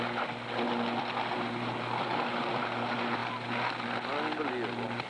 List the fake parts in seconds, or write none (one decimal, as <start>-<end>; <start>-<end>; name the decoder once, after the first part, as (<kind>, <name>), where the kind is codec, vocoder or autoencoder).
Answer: none